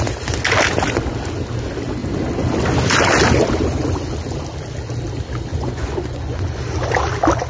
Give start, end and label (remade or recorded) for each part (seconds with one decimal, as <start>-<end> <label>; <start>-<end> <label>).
0.0-5.5 recorded; 5.5-6.6 remade; 6.6-7.5 recorded